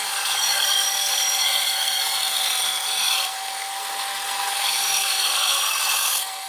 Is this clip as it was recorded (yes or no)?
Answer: no